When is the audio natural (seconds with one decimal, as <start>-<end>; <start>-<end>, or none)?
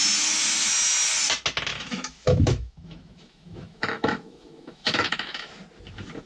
0.0-1.7; 5.5-6.3